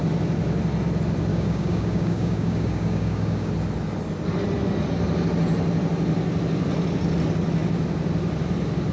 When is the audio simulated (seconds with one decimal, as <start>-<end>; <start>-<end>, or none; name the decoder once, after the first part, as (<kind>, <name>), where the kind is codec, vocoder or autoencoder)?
1.3-3.5 (codec, DAC)